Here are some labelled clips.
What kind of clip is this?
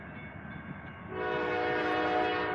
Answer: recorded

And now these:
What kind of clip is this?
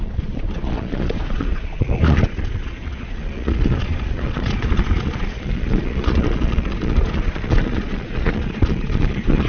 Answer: remade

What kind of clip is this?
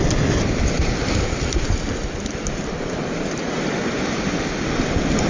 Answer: recorded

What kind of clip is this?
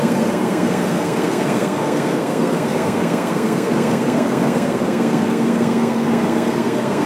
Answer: remade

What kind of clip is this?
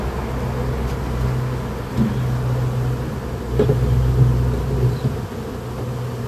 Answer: recorded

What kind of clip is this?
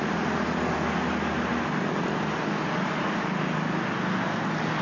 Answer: recorded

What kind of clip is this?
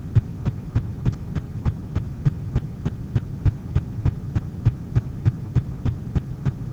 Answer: recorded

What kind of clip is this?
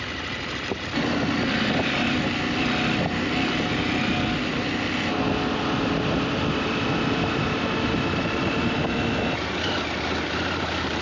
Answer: recorded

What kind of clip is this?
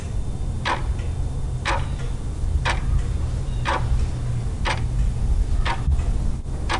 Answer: recorded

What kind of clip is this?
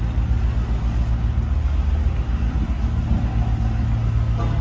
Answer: recorded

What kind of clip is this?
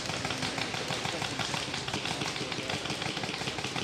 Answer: remade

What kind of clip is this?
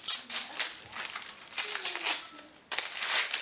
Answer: recorded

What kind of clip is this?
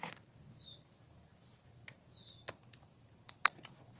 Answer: recorded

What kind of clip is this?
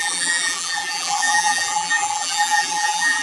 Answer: remade